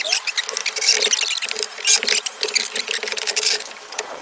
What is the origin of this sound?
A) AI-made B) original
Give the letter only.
B